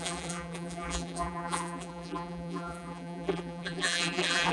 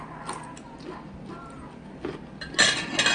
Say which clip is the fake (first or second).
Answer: first